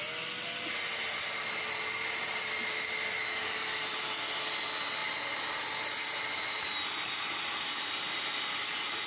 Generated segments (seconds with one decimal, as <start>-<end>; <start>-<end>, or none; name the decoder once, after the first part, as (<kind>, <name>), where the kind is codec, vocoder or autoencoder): none